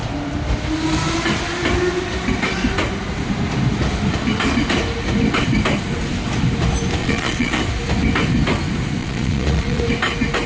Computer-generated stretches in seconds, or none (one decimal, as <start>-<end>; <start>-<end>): 7.0-7.6; 9.0-9.8